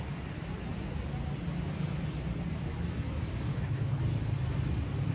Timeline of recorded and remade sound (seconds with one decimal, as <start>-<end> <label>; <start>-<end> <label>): 0.0-3.5 recorded; 3.5-4.0 remade; 4.0-5.1 recorded